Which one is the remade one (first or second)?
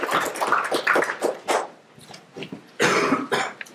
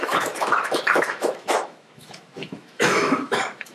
second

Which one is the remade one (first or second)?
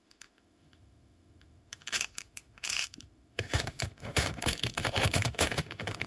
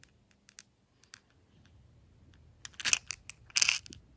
first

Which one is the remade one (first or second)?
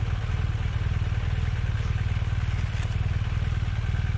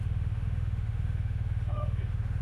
second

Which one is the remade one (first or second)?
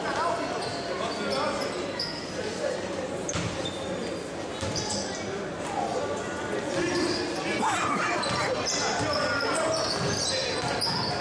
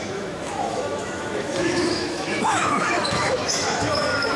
second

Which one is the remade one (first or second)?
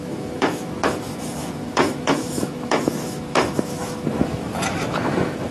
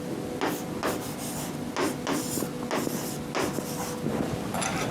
first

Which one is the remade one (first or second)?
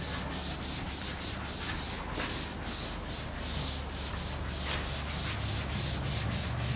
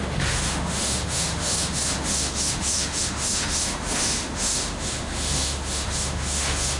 second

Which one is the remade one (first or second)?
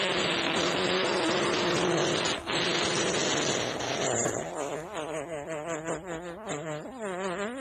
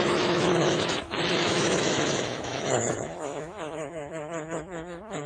second